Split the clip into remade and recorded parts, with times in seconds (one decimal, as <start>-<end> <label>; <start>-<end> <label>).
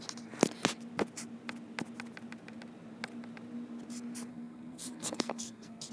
0.0-4.3 recorded; 4.3-5.9 remade